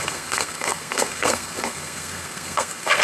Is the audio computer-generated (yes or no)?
yes